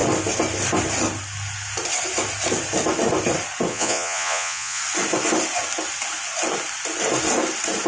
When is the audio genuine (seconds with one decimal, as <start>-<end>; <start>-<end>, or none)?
0.0-3.7; 4.8-7.9

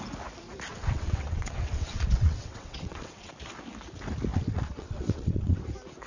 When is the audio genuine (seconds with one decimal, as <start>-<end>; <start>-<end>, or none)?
0.0-0.7; 3.3-4.3; 5.6-6.1

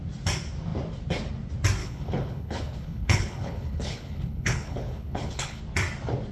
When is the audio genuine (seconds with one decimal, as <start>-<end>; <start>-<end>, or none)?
0.0-1.8; 5.6-6.3

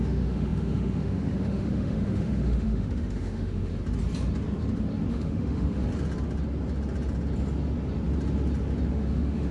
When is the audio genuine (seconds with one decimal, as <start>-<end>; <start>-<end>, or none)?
3.7-5.1; 5.8-8.9

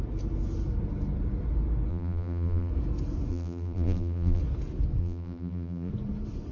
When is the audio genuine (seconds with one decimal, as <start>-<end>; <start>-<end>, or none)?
0.0-1.9; 2.7-3.3; 4.4-5.0; 5.9-6.5

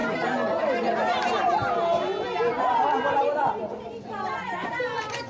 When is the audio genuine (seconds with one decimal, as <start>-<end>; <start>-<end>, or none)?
0.0-5.3

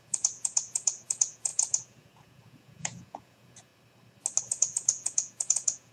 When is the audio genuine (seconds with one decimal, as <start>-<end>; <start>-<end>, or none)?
3.7-4.4

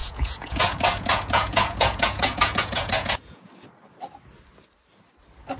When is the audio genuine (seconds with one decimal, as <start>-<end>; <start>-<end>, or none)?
3.4-5.6